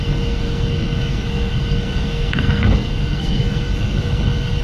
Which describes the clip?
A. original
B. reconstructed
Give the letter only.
B